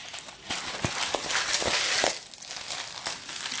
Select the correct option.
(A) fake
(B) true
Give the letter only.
B